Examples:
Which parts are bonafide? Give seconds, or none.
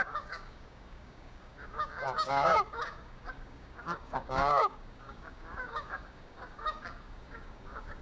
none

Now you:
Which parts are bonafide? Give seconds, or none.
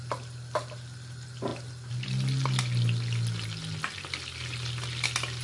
0.0-5.4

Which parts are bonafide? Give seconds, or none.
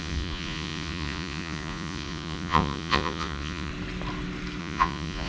3.7-4.6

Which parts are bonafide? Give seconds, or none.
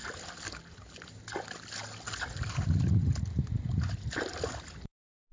0.0-5.3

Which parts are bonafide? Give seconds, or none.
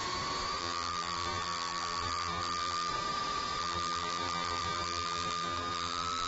0.0-0.6; 2.9-3.6